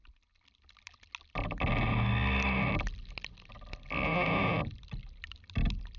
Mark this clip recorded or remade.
recorded